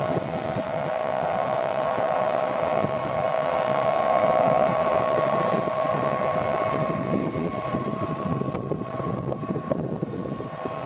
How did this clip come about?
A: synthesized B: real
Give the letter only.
A